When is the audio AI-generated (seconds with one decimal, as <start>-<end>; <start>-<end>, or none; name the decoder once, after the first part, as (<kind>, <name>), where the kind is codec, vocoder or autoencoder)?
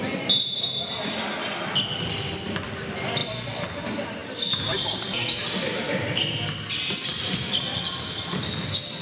none